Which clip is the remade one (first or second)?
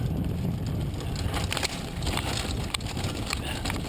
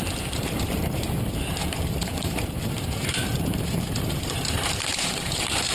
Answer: second